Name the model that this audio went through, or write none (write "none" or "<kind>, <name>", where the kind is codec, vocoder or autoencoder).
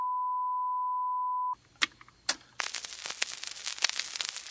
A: none